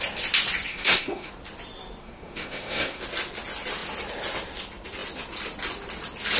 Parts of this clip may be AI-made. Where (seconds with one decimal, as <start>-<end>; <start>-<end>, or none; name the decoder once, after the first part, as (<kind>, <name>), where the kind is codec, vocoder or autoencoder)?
0.7-1.3 (codec, SNAC); 2.0-3.0